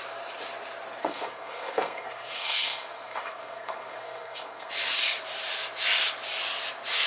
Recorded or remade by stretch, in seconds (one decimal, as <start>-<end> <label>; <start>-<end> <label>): 0.0-1.0 recorded; 1.0-4.7 remade; 4.7-7.1 recorded

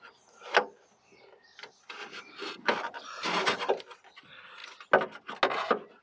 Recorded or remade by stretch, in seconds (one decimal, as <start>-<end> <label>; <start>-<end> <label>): 0.0-6.0 recorded